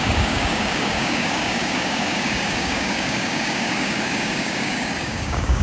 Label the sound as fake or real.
fake